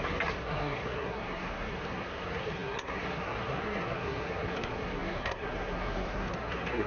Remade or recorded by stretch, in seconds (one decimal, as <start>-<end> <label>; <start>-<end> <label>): 0.0-6.9 remade